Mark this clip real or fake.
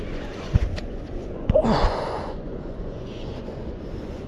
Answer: fake